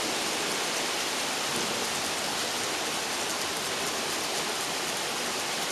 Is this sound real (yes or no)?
yes